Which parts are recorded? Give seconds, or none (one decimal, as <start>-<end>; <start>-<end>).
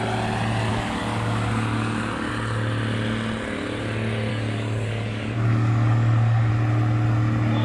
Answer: 0.0-0.7; 2.3-4.3; 6.5-7.6